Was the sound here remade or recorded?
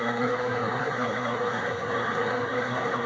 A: remade